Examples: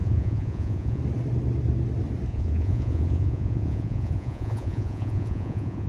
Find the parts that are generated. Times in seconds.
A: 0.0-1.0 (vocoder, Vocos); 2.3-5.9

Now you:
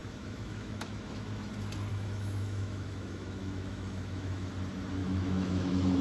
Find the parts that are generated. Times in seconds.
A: 0.0-1.5 (autoencoder, DAC-VAE); 1.9-4.5; 5.0-6.0

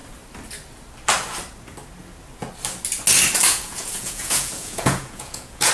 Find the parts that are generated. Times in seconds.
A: 3.5-5.7 (vocoder, Vocos)

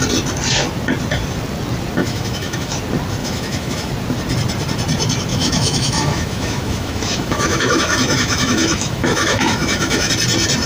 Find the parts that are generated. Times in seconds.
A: 2.0-2.8 (autoencoder, DAC-VAE); 3.2-3.9; 5.3-10.1

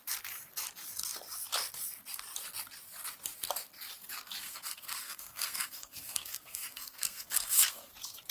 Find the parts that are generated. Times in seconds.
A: 4.4-7.9 (codec, SNAC)